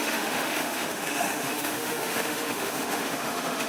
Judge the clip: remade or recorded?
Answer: remade